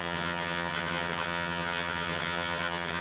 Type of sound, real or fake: fake